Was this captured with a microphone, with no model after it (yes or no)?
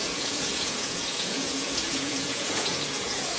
no